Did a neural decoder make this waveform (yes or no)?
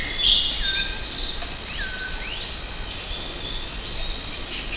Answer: no